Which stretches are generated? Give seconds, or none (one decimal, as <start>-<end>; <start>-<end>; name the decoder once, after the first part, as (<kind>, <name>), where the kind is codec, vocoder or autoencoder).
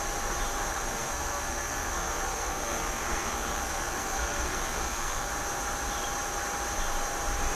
0.7-5.3 (codec, SNAC)